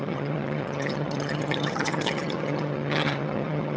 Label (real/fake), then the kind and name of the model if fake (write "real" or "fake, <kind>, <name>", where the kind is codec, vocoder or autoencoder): fake, vocoder, HiFi-GAN